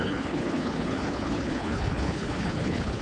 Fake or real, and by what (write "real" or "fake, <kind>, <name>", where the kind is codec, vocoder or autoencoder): fake, codec, HILCodec